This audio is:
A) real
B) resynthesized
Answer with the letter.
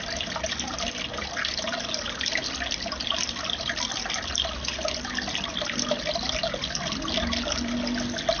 A